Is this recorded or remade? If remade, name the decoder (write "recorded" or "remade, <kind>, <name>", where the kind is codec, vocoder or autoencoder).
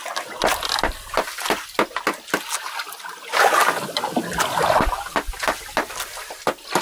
recorded